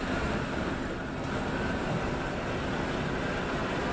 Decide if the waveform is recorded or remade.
recorded